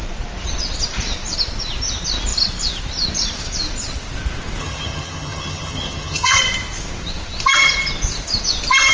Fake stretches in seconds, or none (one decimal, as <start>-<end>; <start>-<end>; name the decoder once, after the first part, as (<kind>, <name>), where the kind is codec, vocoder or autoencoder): 4.6-6.4 (vocoder, HiFi-GAN)